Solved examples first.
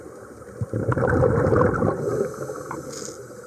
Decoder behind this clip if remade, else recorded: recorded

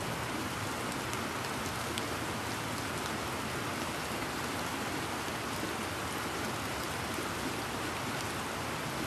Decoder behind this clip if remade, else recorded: recorded